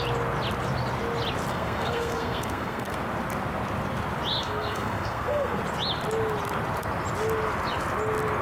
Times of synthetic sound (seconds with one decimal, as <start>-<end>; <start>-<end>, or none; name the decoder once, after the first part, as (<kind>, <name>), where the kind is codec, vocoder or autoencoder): 1.5-3.0 (codec, SNAC); 4.3-5.6